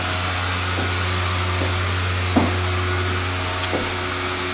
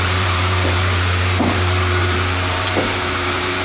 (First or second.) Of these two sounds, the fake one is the second